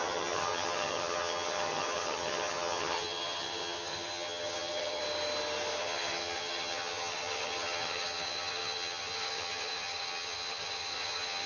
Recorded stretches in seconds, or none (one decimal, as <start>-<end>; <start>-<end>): 5.0-5.8